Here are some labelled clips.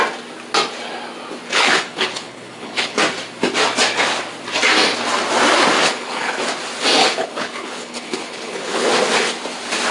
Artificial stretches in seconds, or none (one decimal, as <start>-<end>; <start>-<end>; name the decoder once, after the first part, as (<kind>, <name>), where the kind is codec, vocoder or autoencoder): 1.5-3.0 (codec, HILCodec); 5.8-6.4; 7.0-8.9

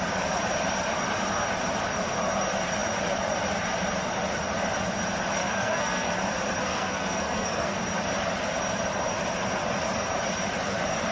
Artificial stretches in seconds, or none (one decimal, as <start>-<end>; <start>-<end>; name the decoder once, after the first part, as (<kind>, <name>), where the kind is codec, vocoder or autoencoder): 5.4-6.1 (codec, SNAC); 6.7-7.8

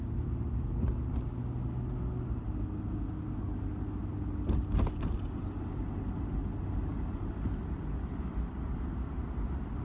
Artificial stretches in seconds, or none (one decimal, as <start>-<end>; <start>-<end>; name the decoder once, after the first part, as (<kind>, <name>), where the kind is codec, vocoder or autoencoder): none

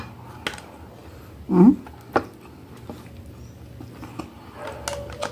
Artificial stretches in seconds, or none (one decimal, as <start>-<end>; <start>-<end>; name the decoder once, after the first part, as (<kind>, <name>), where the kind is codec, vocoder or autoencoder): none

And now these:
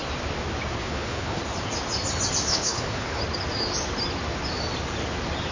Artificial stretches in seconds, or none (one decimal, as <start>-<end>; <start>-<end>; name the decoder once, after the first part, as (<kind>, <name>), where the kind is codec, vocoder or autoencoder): 0.8-1.4 (codec, HILCodec); 2.5-3.2